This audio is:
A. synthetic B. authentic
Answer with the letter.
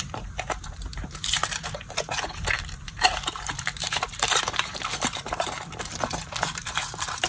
A